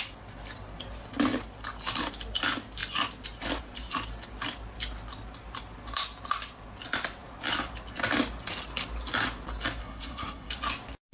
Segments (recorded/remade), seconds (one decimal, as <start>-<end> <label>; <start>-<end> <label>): 0.0-9.8 recorded; 9.8-10.5 remade; 10.5-11.1 recorded